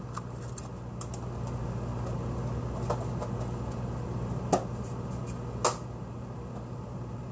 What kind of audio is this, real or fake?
real